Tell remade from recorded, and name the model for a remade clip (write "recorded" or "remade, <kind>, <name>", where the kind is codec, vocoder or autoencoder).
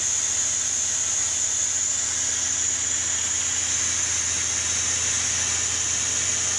recorded